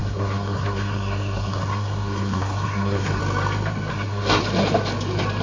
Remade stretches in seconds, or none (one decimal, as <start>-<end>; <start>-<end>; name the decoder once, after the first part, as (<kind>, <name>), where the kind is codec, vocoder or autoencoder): 0.0-3.2 (codec, SNAC); 3.9-4.4

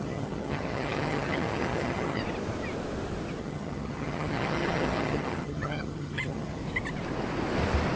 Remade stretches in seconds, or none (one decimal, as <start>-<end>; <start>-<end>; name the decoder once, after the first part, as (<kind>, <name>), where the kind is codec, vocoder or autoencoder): 0.0-2.2 (vocoder, HiFi-GAN); 3.4-6.6

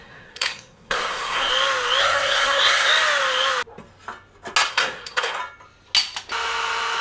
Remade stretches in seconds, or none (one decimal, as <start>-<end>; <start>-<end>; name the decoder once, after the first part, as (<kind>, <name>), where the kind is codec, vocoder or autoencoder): 0.0-1.5 (codec, SNAC); 2.0-2.9; 4.7-5.4

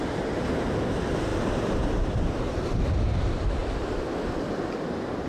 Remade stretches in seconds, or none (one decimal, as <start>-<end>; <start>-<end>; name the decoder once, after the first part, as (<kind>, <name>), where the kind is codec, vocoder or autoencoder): none

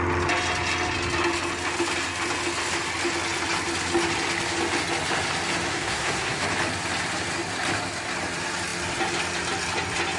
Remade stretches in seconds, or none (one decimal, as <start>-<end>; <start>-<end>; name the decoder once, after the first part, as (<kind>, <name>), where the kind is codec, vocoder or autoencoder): 5.7-6.4 (codec, SNAC)

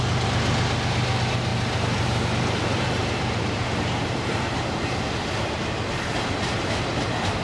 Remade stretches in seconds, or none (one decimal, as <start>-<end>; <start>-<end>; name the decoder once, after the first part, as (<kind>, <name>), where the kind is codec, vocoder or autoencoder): 1.5-5.1 (vocoder, BigVGAN v2)

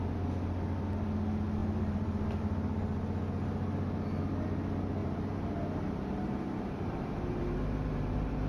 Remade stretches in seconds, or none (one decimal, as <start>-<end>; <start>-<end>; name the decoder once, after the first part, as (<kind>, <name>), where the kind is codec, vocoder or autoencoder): 1.6-2.4 (vocoder, BigVGAN v2); 5.0-8.5

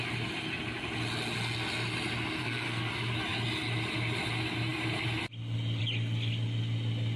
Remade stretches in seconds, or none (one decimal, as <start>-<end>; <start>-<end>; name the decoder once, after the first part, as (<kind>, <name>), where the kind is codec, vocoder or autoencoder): 2.4-2.9 (codec, SNAC)